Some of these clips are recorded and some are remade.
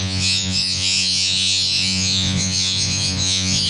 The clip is remade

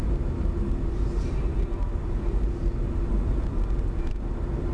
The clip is recorded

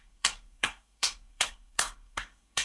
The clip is remade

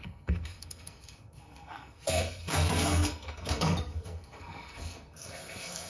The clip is remade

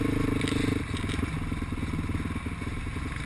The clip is recorded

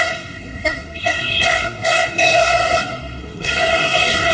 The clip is remade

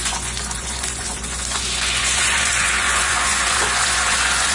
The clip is remade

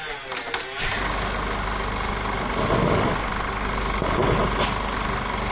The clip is recorded